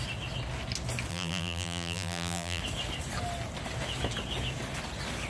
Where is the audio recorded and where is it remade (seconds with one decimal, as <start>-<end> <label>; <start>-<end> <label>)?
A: 0.0-1.1 recorded; 1.1-2.6 remade; 2.6-5.3 recorded